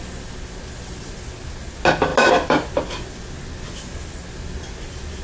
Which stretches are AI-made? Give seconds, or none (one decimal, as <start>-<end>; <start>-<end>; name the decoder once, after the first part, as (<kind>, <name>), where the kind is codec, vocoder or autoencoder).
none

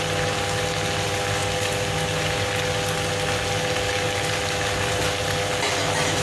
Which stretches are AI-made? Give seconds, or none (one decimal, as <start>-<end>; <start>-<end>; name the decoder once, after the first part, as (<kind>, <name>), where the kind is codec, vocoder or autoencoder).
none

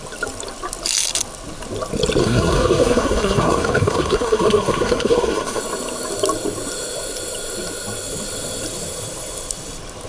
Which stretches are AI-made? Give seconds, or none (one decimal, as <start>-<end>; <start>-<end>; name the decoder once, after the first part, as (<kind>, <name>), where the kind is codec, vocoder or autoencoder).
2.2-5.6 (codec, SNAC)

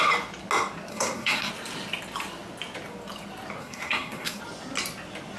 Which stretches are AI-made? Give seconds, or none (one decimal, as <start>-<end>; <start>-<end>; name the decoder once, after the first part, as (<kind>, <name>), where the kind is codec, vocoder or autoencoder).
0.9-1.5 (codec, SNAC); 3.6-4.4